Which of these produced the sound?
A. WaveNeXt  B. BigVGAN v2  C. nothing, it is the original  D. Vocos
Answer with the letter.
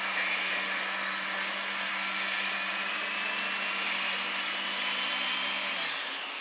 C